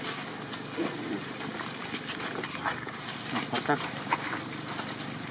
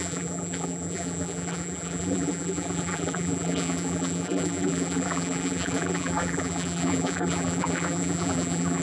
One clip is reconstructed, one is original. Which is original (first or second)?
first